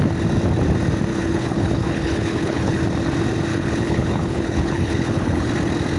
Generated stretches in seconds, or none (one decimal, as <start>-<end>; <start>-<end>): 1.1-2.8; 3.5-5.5